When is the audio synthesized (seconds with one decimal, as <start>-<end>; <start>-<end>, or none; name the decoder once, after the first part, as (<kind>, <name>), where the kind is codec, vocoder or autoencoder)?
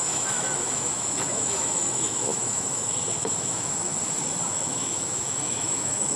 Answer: 0.0-3.9 (autoencoder, DAC-VAE); 4.5-6.2